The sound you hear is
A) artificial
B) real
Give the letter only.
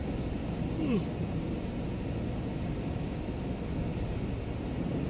B